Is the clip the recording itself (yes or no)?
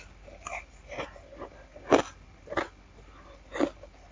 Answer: no